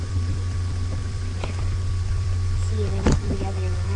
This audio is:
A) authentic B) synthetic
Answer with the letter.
B